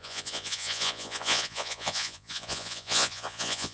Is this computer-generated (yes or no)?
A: yes